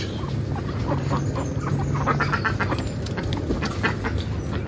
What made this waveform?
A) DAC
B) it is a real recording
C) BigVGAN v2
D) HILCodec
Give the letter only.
B